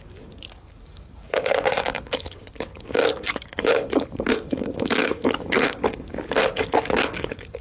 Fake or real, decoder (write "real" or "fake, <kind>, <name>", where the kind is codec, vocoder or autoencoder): fake, codec, DAC